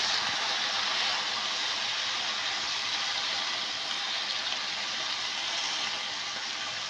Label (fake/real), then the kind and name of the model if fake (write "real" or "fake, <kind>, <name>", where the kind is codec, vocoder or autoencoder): real